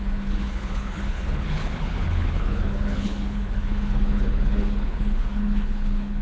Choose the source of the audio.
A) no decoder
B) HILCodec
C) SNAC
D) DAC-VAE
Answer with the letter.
B